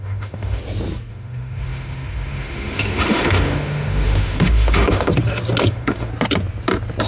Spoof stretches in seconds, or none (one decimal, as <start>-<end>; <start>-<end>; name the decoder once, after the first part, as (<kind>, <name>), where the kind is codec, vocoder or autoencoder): 0.0-0.6 (autoencoder, DAC-VAE); 1.1-5.1; 5.6-6.1